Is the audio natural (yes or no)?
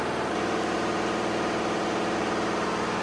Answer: no